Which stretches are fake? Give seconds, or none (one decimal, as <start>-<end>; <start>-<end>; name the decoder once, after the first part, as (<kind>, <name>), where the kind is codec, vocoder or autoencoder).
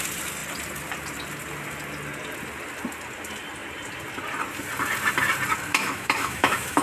5.7-6.8 (autoencoder, DAC-VAE)